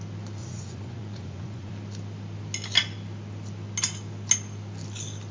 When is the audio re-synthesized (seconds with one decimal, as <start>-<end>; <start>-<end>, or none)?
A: 0.4-1.7